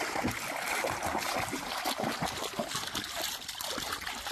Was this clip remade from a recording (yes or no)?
no